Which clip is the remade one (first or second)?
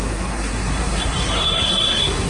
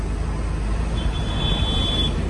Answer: first